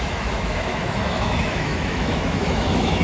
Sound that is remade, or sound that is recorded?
remade